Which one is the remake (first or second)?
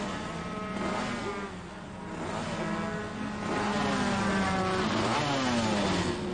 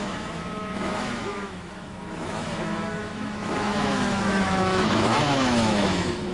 second